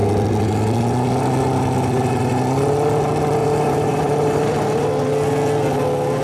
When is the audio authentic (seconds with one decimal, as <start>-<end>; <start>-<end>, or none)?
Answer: 0.0-3.4; 4.9-6.2